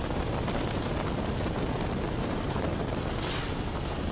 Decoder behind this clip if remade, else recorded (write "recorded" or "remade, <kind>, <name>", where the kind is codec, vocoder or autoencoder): recorded